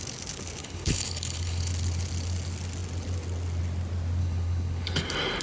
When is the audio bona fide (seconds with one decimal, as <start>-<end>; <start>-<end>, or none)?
0.0-0.6; 1.7-4.2; 5.0-5.4